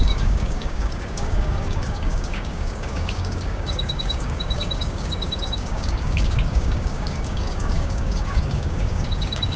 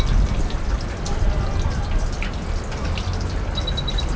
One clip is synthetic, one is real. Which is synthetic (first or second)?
first